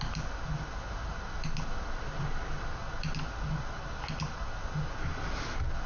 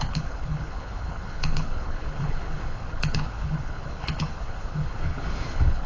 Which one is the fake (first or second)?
second